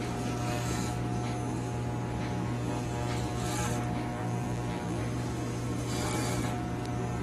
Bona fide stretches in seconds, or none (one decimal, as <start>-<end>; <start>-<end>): 0.0-4.1; 5.0-7.2